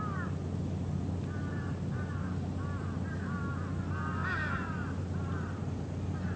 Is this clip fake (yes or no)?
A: no